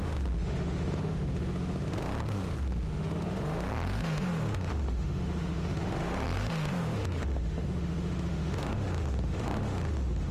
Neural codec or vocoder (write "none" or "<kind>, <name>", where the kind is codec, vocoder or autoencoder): autoencoder, DAC-VAE